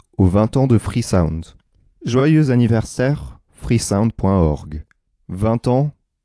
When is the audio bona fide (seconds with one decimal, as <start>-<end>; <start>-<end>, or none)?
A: 2.2-6.2

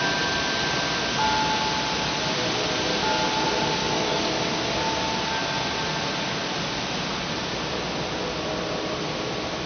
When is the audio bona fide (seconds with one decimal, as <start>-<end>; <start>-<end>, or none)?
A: 0.0-3.8; 4.5-9.7

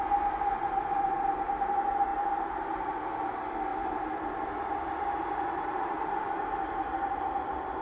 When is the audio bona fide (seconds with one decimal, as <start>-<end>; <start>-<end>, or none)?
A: 0.0-2.1; 2.9-3.7; 7.3-7.8

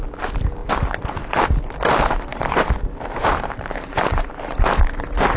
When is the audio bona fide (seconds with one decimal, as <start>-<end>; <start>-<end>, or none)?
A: 0.0-0.6; 1.3-2.3